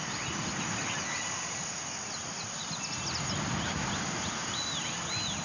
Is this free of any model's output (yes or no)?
yes